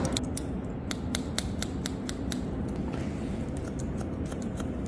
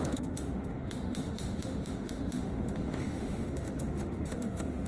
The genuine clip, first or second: first